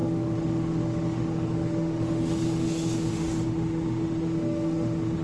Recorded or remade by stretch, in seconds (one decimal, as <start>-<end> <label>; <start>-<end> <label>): 0.0-5.2 remade